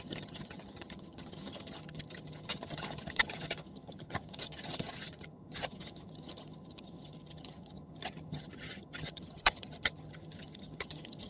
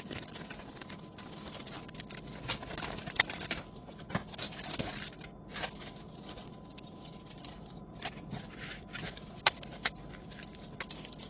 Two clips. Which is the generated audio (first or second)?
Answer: first